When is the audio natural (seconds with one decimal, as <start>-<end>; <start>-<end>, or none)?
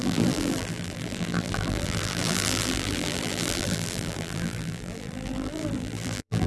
none